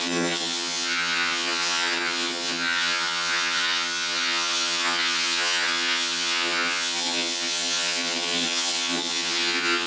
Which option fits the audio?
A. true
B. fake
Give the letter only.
B